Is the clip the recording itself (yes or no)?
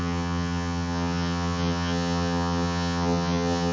no